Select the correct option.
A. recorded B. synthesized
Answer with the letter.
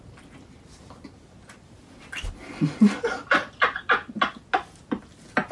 A